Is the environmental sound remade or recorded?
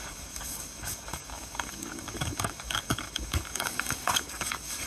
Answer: remade